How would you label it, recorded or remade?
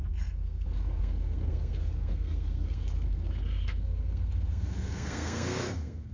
remade